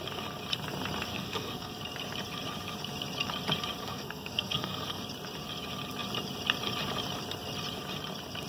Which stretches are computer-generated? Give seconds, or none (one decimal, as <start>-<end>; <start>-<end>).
1.1-1.8; 3.8-5.0